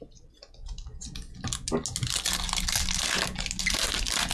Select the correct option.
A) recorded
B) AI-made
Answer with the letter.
A